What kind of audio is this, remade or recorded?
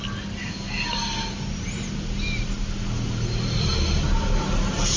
recorded